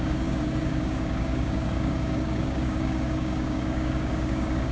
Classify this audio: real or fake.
fake